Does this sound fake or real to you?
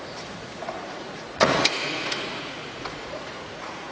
fake